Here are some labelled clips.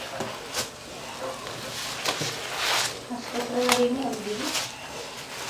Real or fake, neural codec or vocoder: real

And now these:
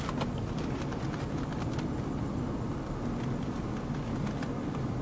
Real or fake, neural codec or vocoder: real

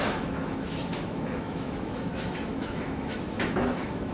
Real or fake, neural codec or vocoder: fake, autoencoder, DAC-VAE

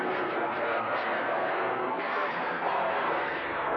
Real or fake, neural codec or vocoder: fake, codec, SNAC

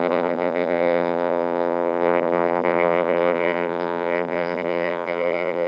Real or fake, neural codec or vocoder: fake, vocoder, BigVGAN v2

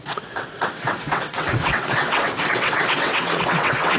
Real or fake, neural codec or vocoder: fake, vocoder, WaveNeXt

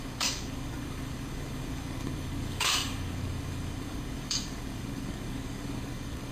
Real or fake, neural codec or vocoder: fake, codec, DAC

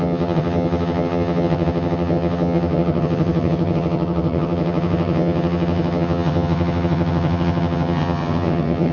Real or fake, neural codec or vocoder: fake, vocoder, HiFi-GAN